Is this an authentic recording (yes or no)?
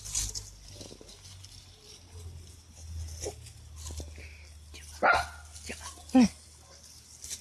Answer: yes